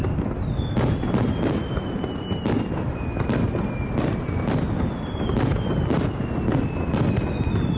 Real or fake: real